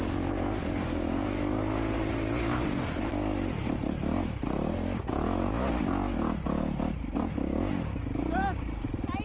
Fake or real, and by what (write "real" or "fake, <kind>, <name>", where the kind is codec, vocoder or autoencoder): real